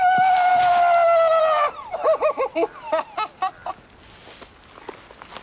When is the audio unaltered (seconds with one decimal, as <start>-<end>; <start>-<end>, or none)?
0.0-5.4